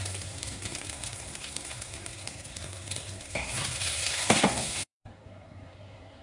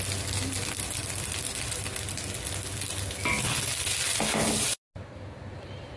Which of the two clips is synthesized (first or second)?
first